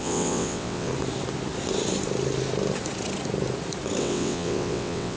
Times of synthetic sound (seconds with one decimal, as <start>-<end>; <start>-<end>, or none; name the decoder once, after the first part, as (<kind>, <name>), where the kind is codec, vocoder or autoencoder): 0.0-0.9 (vocoder, WaveNeXt); 4.0-5.2